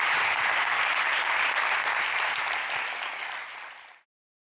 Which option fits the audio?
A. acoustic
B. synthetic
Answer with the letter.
A